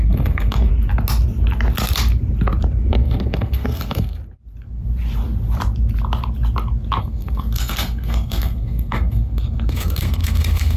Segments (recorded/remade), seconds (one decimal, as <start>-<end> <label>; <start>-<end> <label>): 0.0-0.7 remade; 0.7-2.9 recorded; 2.9-4.2 remade; 4.2-7.0 recorded; 7.0-10.8 remade